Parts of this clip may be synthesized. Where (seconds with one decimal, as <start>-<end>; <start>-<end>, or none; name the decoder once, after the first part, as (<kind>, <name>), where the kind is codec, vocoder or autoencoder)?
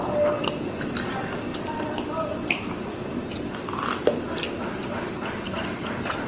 none